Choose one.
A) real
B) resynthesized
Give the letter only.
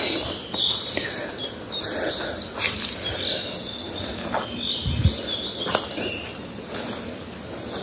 A